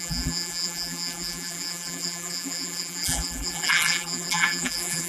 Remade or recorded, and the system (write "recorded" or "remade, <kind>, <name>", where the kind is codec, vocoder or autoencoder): remade, vocoder, BigVGAN v2